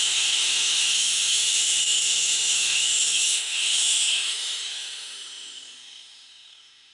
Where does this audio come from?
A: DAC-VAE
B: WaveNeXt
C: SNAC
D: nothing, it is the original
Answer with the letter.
A